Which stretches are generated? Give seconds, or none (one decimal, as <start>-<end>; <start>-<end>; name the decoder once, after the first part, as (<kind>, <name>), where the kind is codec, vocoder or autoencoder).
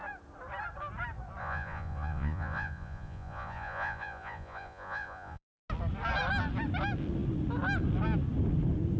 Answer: 1.4-5.6 (vocoder, Vocos)